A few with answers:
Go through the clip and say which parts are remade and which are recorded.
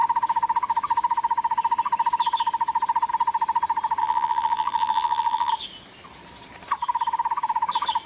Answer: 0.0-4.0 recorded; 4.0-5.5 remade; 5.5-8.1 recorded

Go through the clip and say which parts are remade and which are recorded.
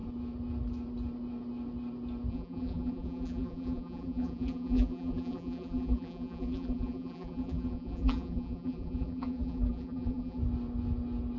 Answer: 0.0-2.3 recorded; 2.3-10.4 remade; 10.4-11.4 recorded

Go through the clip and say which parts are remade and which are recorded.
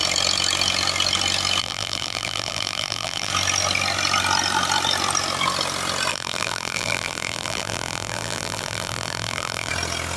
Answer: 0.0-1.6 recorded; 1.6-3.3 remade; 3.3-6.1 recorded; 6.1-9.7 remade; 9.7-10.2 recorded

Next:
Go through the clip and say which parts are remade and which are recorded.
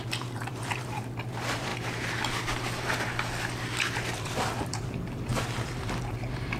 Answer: 0.0-1.7 remade; 1.7-4.1 recorded; 4.1-6.6 remade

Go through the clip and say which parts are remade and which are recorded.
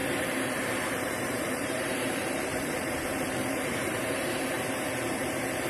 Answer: 0.0-5.7 remade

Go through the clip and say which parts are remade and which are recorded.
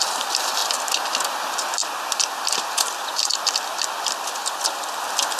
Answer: 0.0-5.4 recorded